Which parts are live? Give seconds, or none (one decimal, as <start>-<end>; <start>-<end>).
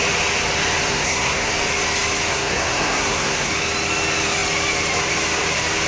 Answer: 0.0-0.9; 1.5-2.3; 3.5-5.9